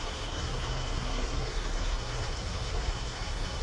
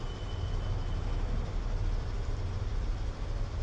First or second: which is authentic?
second